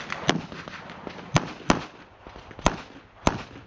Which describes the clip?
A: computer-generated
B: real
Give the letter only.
B